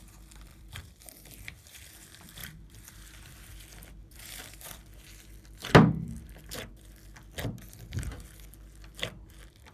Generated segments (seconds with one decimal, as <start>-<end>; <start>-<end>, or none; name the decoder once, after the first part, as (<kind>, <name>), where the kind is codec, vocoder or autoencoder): 0.5-1.9 (vocoder, BigVGAN v2); 2.4-3.5; 4.0-4.8; 5.6-6.7